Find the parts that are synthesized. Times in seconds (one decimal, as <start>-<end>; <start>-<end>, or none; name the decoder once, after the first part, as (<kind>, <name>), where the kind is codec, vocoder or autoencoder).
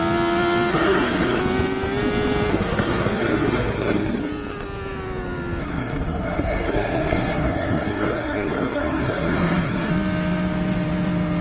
0.7-1.4 (codec, SNAC); 2.5-4.2; 5.6-9.9